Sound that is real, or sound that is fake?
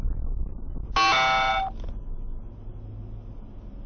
real